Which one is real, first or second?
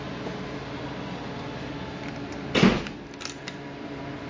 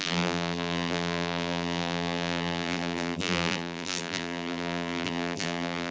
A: first